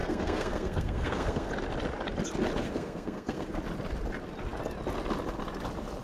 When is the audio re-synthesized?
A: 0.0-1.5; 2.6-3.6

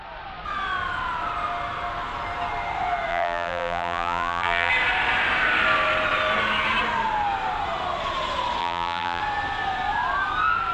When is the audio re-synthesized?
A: 3.1-4.7; 8.6-9.2